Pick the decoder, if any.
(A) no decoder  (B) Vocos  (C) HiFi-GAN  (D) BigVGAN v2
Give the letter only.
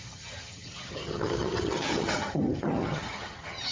C